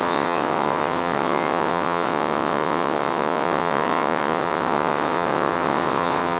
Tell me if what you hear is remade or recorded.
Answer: remade